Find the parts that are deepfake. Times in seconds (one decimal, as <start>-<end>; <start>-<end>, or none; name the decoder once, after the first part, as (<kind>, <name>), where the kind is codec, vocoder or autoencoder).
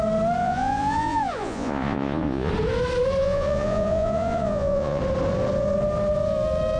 0.4-2.5 (vocoder, Vocos); 3.2-5.0